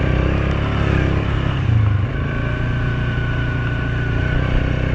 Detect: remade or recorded recorded